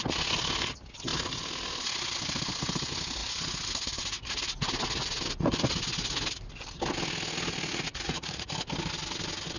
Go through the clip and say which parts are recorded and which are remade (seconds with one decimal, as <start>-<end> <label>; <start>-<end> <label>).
0.0-7.7 recorded; 7.7-8.5 remade; 8.5-9.6 recorded